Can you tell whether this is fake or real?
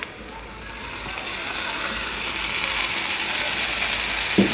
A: real